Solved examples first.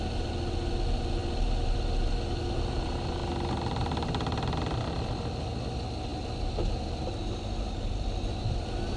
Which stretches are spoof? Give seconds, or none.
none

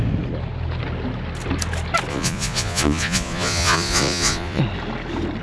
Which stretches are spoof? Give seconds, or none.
2.1-4.6 (vocoder, Vocos)

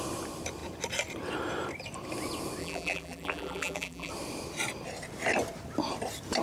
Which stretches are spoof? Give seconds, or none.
2.6-4.1 (vocoder, BigVGAN v2)